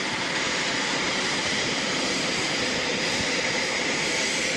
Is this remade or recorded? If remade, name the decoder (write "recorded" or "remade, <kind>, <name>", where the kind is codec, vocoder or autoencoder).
remade, vocoder, BigVGAN v2